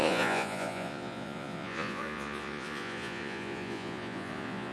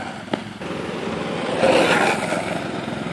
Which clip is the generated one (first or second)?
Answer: first